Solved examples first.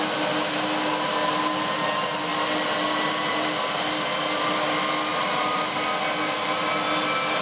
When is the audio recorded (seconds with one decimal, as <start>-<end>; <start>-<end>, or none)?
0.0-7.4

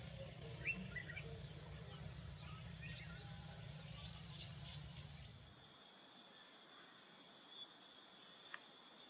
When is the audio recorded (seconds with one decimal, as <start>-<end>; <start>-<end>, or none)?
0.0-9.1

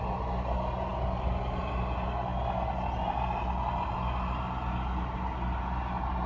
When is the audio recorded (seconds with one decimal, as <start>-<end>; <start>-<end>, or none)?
0.0-6.3